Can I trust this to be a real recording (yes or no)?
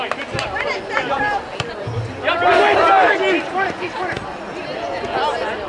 yes